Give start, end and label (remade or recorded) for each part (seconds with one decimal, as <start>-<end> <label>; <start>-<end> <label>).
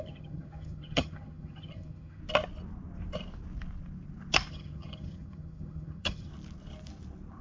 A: 0.0-2.2 remade; 2.2-4.5 recorded; 4.5-6.3 remade; 6.3-7.4 recorded